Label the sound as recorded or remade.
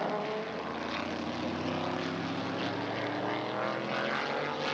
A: recorded